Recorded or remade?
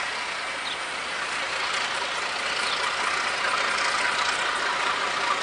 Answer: recorded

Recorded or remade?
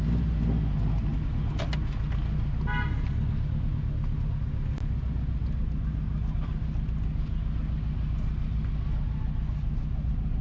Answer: recorded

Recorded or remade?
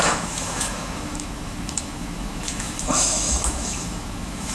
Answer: remade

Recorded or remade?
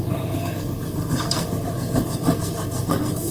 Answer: remade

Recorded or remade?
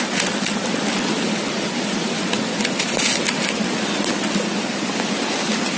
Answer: recorded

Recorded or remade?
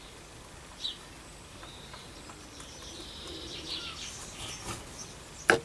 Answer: recorded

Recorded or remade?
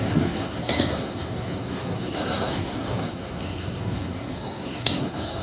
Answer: remade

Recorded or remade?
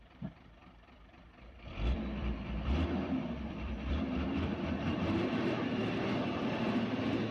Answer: remade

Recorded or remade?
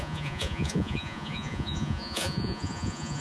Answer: remade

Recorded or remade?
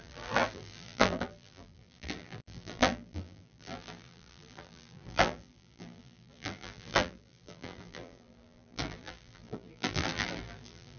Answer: remade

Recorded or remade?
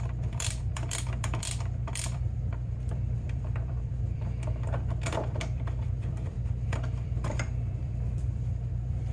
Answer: remade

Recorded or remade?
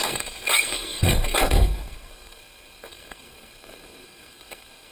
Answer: remade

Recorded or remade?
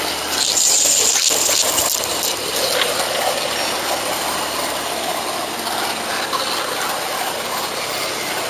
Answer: recorded